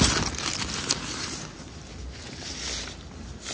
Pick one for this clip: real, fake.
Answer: real